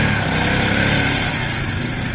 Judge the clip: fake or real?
real